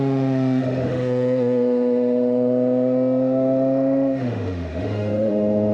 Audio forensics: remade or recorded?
remade